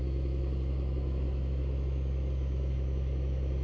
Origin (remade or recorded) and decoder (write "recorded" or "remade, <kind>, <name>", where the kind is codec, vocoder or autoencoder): remade, autoencoder, DAC-VAE